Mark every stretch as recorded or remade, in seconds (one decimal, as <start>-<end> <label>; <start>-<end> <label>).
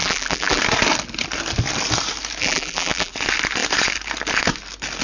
0.0-0.6 remade; 0.6-2.4 recorded; 2.4-3.1 remade; 3.1-5.0 recorded